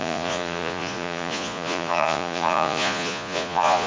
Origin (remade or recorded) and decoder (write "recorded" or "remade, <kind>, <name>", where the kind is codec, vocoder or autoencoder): remade, vocoder, Vocos